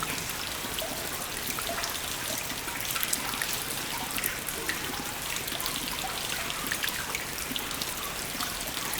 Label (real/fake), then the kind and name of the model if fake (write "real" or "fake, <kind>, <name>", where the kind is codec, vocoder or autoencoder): real